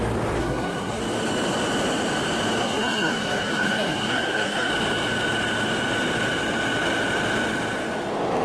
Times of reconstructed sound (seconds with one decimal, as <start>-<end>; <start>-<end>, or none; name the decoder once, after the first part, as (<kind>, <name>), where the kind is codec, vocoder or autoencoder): 0.4-1.0 (codec, SNAC); 2.6-4.7